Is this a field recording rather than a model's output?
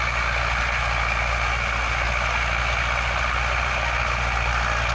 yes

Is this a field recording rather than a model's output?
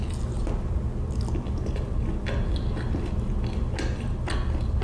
yes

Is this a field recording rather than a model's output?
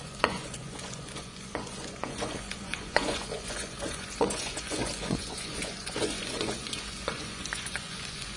no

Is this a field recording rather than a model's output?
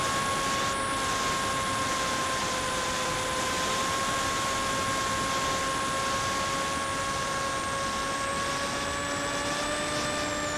yes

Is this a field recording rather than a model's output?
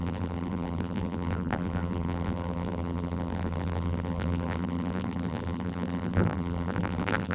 no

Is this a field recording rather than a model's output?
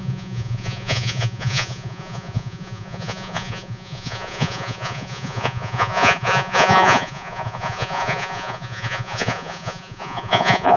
no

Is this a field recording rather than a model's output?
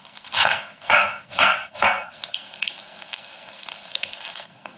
no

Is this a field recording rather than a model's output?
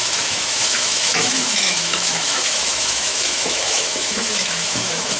no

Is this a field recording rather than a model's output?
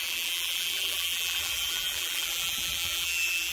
no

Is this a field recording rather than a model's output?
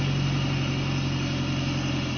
yes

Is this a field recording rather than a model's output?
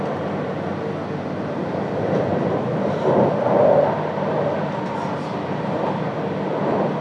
yes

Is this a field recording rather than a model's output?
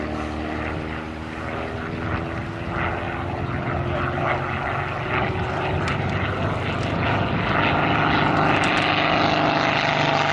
yes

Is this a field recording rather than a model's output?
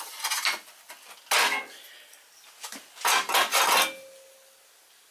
yes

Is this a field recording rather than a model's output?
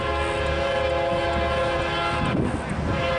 yes